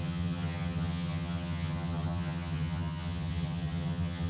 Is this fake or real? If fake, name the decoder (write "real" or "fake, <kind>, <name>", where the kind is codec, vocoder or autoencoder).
fake, vocoder, HiFi-GAN